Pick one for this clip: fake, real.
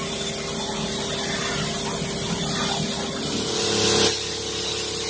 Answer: real